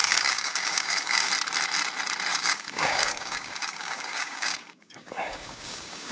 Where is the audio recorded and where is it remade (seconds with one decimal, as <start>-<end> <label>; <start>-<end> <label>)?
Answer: 0.0-1.3 remade; 1.3-2.3 recorded; 2.3-6.1 remade